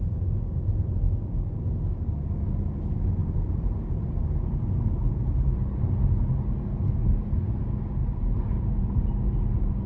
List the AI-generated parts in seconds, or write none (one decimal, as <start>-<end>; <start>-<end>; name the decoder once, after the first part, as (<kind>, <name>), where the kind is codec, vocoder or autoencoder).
3.2-4.5 (vocoder, BigVGAN v2); 8.0-9.1